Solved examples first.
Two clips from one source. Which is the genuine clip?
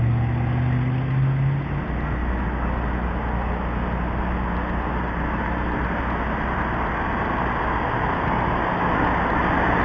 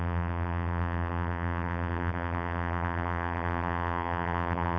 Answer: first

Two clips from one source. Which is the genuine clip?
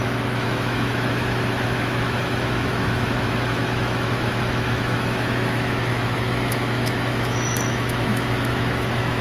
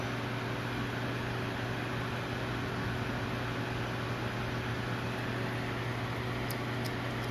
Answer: second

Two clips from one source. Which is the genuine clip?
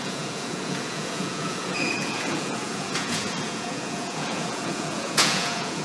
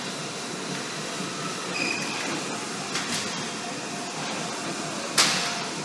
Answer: second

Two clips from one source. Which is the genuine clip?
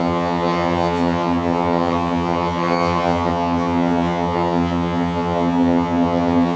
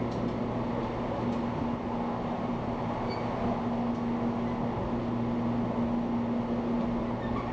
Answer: second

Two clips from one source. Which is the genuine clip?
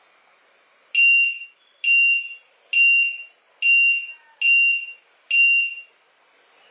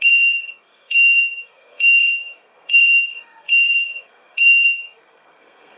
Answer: first